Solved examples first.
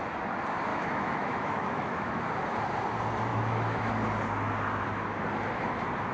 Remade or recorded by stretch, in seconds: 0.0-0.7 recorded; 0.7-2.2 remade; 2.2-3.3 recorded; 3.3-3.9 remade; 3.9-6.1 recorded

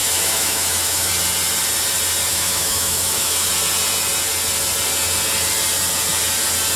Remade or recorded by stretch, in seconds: 0.0-1.1 remade; 1.1-2.3 recorded; 2.3-3.5 remade; 3.5-6.8 recorded

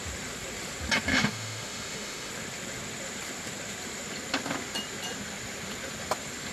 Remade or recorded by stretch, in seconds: 0.0-1.1 recorded; 1.1-2.3 remade; 2.3-6.5 recorded

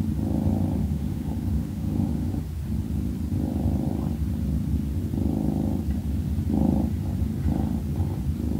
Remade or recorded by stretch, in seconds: 0.0-0.8 recorded; 0.8-2.4 remade; 2.4-8.6 recorded

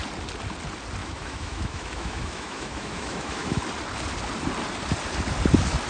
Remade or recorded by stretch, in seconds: 0.0-1.0 recorded; 1.0-3.6 remade; 3.6-5.9 recorded

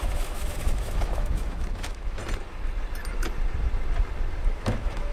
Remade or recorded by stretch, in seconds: 0.0-2.2 remade; 2.2-4.5 recorded; 4.5-5.1 remade